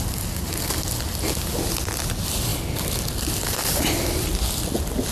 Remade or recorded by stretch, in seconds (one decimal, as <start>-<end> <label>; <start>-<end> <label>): 0.0-5.1 recorded